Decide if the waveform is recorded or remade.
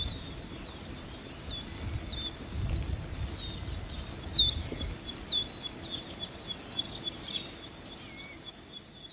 recorded